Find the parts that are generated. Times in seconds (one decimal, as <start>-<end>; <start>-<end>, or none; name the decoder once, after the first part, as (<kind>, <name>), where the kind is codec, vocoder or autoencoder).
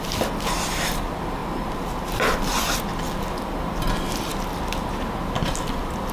1.4-2.8 (vocoder, BigVGAN v2)